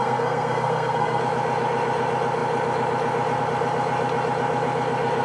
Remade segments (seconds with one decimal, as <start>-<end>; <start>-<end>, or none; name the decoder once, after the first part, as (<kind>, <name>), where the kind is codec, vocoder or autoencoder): 0.0-1.2 (codec, SNAC)